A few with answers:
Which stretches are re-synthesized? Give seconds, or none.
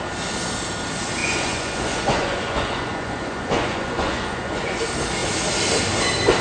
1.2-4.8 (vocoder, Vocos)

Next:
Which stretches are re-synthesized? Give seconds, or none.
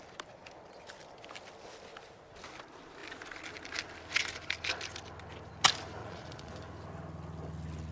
6.0-6.5 (vocoder, Vocos)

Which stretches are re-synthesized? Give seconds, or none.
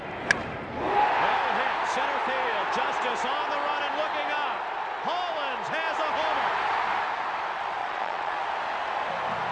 7.8-8.4 (vocoder, Vocos)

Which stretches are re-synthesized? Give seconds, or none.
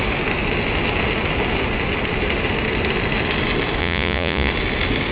3.8-4.5 (vocoder, Vocos)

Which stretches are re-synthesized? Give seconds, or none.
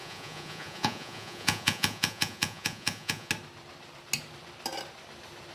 0.0-3.3 (vocoder, Vocos)